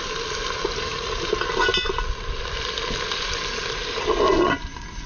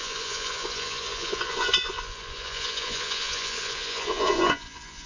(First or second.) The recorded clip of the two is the first